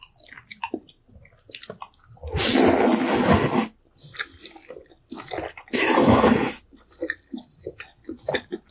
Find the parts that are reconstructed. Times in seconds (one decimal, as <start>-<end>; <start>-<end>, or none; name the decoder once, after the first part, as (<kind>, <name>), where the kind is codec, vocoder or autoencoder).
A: none